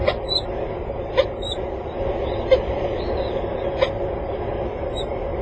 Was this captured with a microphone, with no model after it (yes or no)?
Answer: yes